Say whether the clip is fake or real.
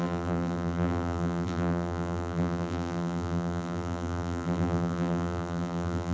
fake